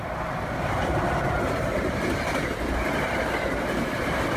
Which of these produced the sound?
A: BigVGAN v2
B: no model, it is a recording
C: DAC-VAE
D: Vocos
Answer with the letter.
B